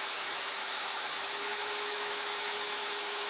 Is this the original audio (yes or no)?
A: no